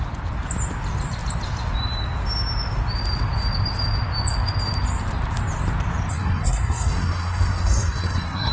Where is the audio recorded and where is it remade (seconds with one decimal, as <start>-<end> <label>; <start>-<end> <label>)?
0.0-6.1 recorded; 6.1-8.5 remade